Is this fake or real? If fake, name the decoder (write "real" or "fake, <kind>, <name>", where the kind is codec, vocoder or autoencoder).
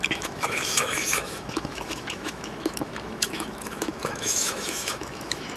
fake, autoencoder, DAC-VAE